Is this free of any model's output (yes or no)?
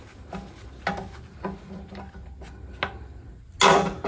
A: yes